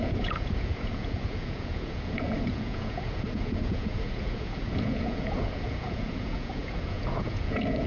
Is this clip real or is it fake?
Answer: fake